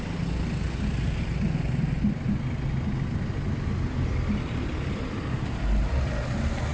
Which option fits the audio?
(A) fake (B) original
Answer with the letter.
B